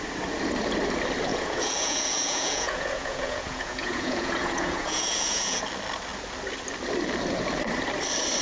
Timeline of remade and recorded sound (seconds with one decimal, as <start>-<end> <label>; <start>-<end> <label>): 0.0-1.3 recorded; 1.3-5.6 remade; 5.6-8.4 recorded

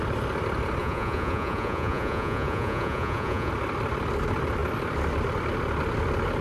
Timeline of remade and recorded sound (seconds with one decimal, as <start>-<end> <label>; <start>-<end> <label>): 0.0-0.8 recorded; 0.8-3.5 remade; 3.5-6.4 recorded

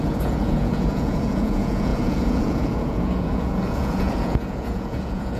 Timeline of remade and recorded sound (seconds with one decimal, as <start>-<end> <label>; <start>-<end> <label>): 0.0-5.4 remade

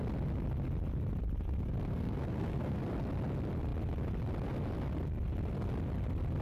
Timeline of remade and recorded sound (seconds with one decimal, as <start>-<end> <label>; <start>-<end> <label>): 0.0-1.9 recorded; 1.9-2.8 remade; 2.8-6.4 recorded

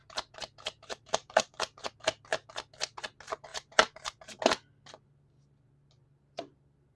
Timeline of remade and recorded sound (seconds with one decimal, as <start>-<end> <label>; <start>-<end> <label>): 0.0-1.8 remade; 1.8-3.5 recorded; 3.5-4.4 remade; 4.4-7.0 recorded

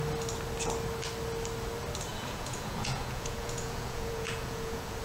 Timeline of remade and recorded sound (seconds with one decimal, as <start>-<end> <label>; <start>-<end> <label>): 0.0-2.1 recorded; 2.1-5.0 remade

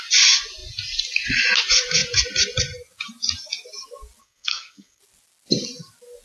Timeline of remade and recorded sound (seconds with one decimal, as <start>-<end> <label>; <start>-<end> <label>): 0.0-4.2 recorded; 4.2-5.0 remade; 5.0-6.2 recorded

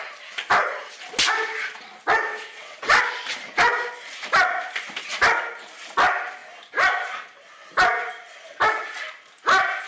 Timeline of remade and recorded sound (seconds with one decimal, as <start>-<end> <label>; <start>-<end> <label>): 0.0-2.3 recorded; 2.3-3.0 remade; 3.0-9.9 recorded